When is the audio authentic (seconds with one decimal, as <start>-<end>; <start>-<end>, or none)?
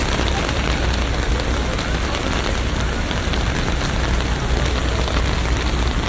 0.0-6.1